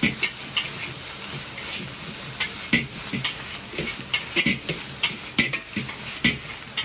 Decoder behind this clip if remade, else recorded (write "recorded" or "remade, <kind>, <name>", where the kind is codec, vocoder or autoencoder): recorded